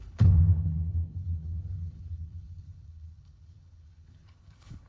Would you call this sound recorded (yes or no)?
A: no